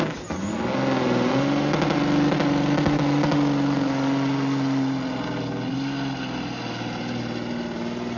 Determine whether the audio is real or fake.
real